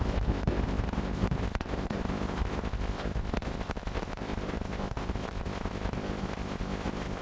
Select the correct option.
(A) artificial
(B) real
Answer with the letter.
A